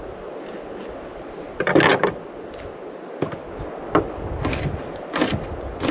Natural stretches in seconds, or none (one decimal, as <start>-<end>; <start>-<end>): 0.0-5.9